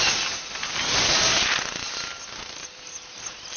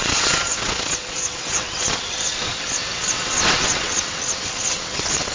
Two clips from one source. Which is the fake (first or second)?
second